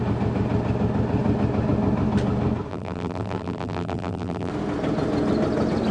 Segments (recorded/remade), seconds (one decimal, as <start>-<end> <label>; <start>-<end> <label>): 0.0-2.7 recorded; 2.7-4.5 remade; 4.5-5.9 recorded